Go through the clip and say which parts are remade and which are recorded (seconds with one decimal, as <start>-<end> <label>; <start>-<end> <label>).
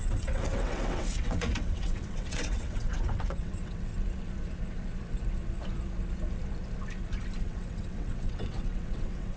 0.0-3.9 remade; 3.9-7.4 recorded; 7.4-9.4 remade